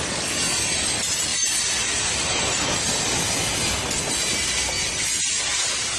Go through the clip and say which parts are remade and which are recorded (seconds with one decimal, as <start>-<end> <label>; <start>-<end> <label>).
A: 0.0-6.0 recorded